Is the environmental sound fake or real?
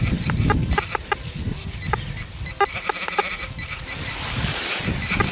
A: fake